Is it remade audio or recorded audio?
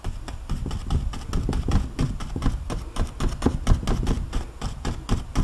recorded